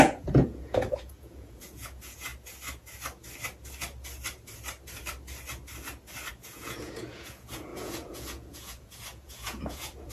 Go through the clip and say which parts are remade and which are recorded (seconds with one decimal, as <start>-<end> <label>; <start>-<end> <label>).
0.0-2.3 remade; 2.3-6.3 recorded; 6.3-10.1 remade